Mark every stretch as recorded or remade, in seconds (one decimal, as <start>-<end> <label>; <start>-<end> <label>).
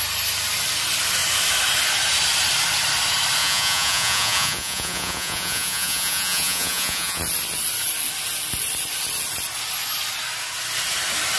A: 0.0-3.4 recorded; 3.4-7.2 remade; 7.2-11.4 recorded